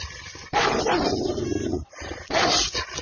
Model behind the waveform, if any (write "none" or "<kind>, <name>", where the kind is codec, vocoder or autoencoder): none